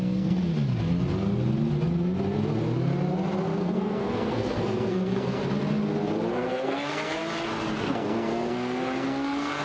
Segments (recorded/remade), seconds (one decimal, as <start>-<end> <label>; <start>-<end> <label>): 0.0-0.5 remade; 0.5-3.6 recorded; 3.6-5.4 remade; 5.4-6.3 recorded; 6.3-7.2 remade; 7.2-7.8 recorded; 7.8-9.6 remade